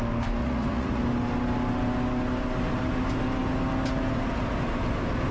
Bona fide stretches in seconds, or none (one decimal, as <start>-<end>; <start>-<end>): 0.0-0.4; 1.0-5.3